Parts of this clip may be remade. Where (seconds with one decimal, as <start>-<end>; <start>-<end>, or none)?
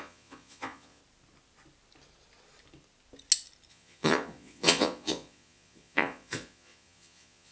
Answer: 0.0-1.0; 3.7-7.5